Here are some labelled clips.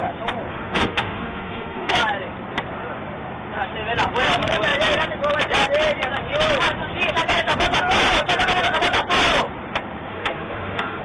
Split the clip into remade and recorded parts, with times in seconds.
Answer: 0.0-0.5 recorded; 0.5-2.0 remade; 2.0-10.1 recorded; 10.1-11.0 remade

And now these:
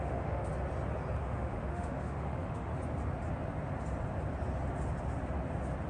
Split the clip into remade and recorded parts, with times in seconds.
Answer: 0.0-0.5 remade; 0.5-1.2 recorded; 1.2-2.7 remade; 2.7-5.9 recorded

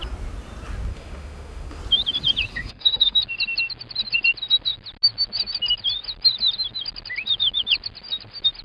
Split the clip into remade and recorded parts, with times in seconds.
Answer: 0.0-0.9 recorded; 0.9-1.8 remade; 1.8-2.5 recorded; 2.5-3.2 remade; 3.2-8.6 recorded

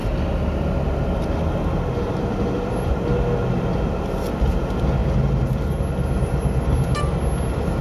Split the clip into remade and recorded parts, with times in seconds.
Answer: 0.0-7.8 recorded

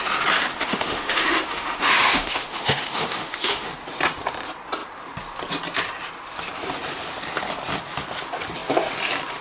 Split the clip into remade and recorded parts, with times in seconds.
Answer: 0.0-0.5 recorded; 0.5-3.7 remade; 3.7-9.4 recorded